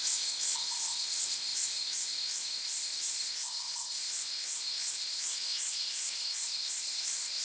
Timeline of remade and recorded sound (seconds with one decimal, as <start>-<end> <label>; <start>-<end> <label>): 0.0-7.4 remade